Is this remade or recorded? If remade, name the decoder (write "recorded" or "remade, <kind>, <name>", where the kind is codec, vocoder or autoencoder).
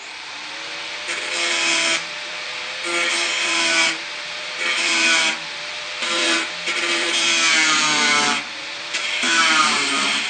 remade, vocoder, BigVGAN v2